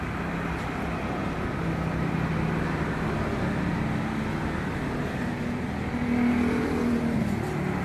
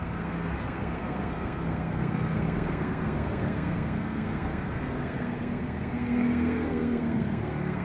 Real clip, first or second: first